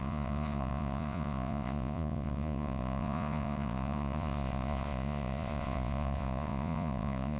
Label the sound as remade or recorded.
remade